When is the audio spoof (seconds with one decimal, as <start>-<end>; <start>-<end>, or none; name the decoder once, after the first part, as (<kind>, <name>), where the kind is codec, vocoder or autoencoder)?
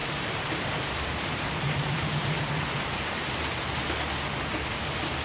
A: 0.0-2.5 (vocoder, BigVGAN v2)